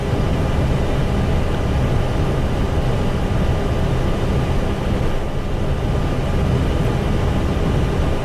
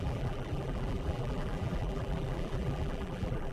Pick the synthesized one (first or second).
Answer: second